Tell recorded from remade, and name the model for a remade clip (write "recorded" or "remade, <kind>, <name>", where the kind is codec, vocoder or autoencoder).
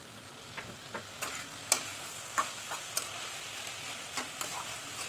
recorded